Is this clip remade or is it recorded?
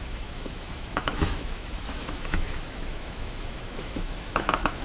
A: remade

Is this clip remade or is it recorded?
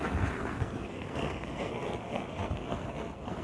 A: remade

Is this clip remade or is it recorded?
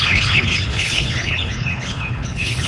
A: remade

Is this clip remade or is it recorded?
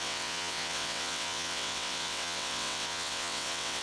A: remade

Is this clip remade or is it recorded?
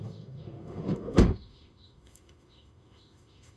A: remade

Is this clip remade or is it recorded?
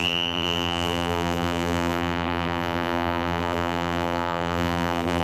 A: remade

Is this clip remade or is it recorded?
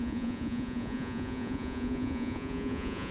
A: remade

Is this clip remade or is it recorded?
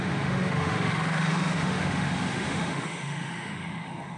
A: remade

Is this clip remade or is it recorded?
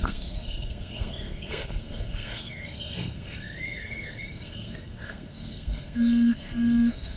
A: remade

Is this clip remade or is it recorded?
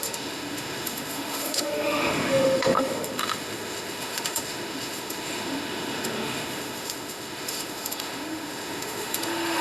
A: remade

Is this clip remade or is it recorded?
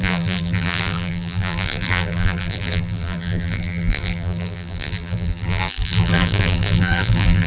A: remade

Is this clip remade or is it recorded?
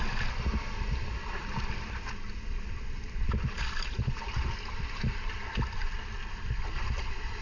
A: recorded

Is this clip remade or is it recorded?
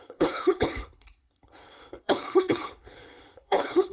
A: remade